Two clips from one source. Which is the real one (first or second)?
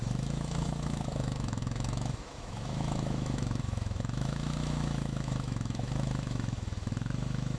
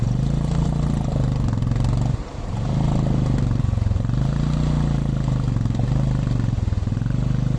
second